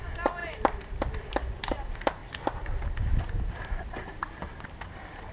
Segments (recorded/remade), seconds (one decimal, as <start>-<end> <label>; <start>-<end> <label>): 0.0-2.2 remade; 2.2-3.3 recorded; 3.3-5.3 remade